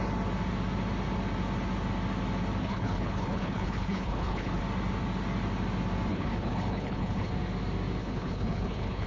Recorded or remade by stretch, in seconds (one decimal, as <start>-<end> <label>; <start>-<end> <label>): 0.0-2.6 recorded; 2.6-4.6 remade; 4.6-6.1 recorded; 6.1-7.3 remade; 7.3-8.0 recorded; 8.0-9.1 remade